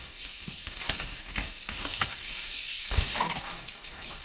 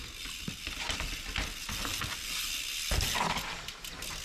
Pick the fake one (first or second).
first